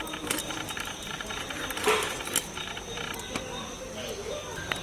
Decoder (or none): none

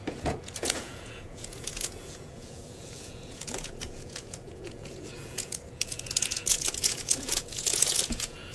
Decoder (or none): vocoder, Vocos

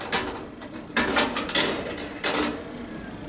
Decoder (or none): none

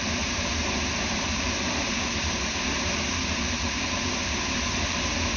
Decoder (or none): vocoder, BigVGAN v2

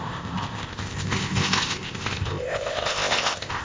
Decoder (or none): codec, ZipCodec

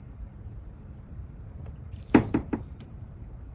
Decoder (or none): vocoder, BigVGAN v2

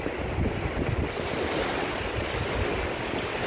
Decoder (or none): none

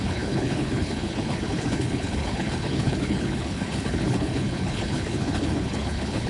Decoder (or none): codec, HILCodec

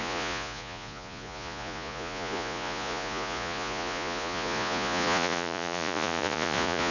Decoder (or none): vocoder, Vocos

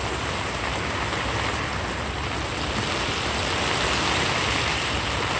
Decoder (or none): none